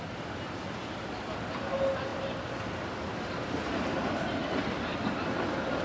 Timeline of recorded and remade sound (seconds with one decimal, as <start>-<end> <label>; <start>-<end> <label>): 0.0-5.8 recorded

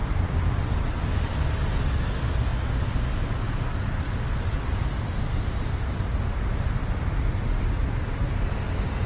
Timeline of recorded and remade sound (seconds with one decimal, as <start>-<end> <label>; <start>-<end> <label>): 0.0-9.1 recorded

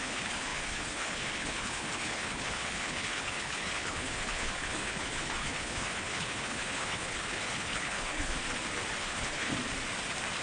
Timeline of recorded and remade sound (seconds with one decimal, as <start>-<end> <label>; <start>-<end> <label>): 0.0-8.4 remade; 8.4-9.0 recorded; 9.0-9.5 remade; 9.5-10.4 recorded

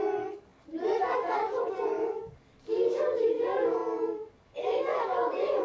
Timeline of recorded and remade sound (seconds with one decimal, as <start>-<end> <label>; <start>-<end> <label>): 0.0-5.6 remade

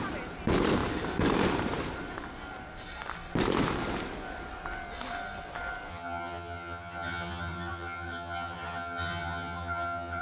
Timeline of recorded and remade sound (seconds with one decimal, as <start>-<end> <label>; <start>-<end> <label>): 0.0-5.9 recorded; 5.9-10.2 remade